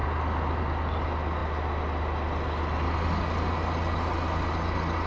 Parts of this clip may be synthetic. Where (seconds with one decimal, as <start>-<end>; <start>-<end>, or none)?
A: none